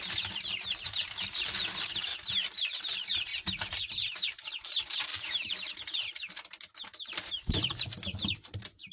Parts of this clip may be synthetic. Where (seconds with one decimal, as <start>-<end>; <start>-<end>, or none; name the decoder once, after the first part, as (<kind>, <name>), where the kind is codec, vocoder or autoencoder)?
0.0-2.1 (vocoder, BigVGAN v2); 2.8-3.3; 3.8-8.9